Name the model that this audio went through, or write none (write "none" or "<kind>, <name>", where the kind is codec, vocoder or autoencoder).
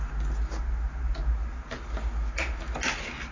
none